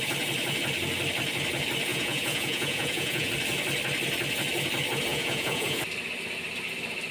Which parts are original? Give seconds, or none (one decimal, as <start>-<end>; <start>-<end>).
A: 0.0-1.9; 3.3-5.1; 5.8-7.1